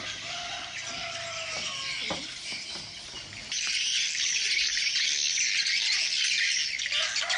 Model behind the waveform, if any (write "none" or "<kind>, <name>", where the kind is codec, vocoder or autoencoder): none